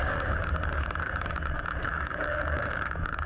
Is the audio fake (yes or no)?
yes